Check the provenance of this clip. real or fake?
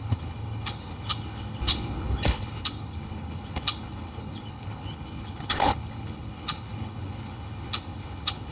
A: fake